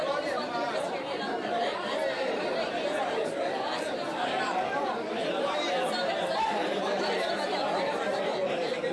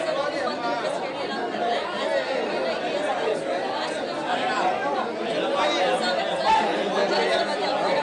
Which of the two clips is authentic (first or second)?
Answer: second